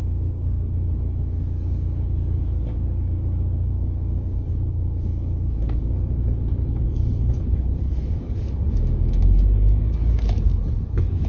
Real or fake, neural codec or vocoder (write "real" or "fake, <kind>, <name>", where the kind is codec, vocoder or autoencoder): fake, codec, DAC